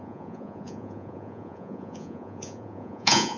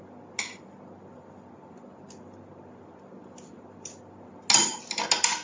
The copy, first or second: first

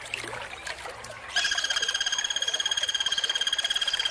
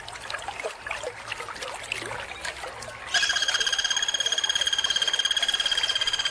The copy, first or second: first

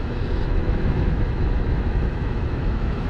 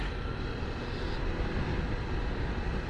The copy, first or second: first